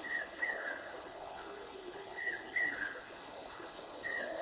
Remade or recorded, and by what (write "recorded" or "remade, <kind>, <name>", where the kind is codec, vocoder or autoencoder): remade, codec, HILCodec